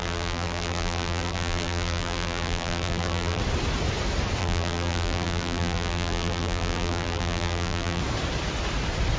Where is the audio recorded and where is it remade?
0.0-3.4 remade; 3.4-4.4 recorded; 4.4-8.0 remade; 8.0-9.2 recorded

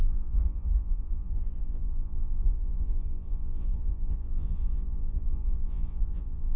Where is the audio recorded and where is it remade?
0.0-6.6 remade

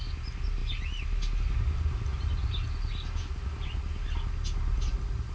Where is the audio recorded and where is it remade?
0.0-5.3 recorded

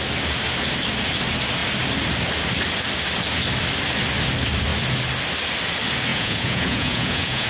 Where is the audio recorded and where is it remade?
0.0-6.1 recorded; 6.1-7.5 remade

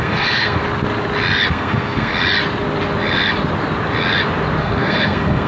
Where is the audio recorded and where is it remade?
0.0-0.6 remade; 0.6-1.5 recorded; 1.5-2.1 remade; 2.1-4.6 recorded; 4.6-5.5 remade

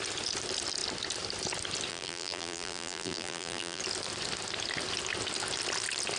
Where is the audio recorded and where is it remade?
0.0-1.9 recorded; 1.9-3.8 remade; 3.8-6.2 recorded

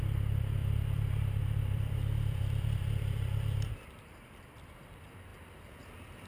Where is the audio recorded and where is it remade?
0.0-5.3 remade; 5.3-6.3 recorded